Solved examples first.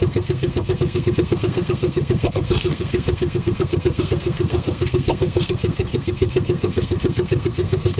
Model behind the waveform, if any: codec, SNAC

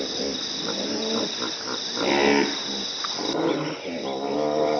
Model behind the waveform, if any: none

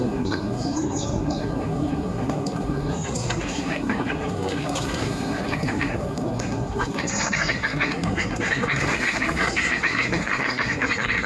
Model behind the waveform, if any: codec, SNAC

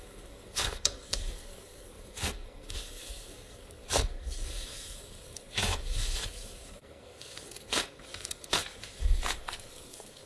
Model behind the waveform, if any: codec, SNAC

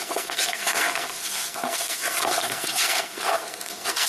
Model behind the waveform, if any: codec, SNAC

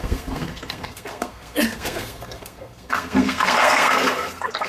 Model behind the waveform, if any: codec, SNAC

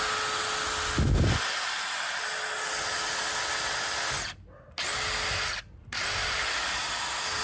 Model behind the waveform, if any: none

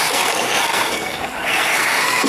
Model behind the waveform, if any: codec, SNAC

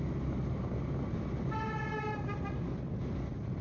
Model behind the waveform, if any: none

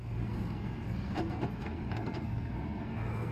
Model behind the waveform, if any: codec, SNAC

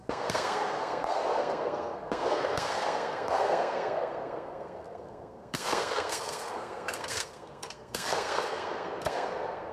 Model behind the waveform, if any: codec, SNAC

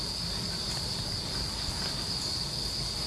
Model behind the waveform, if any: none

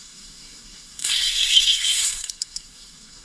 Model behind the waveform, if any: codec, SNAC